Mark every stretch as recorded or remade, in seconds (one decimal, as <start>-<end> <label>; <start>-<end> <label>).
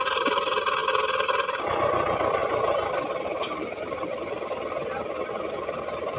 0.0-6.2 recorded